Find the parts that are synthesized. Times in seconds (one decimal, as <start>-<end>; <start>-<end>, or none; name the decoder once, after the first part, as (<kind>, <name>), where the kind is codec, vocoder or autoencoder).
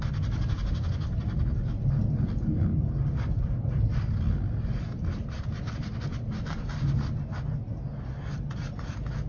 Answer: none